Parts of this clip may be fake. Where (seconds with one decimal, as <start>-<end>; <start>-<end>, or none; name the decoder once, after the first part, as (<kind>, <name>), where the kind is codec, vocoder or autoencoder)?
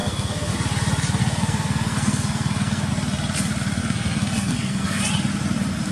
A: 0.0-0.5 (codec, SNAC); 1.2-2.9; 3.8-5.0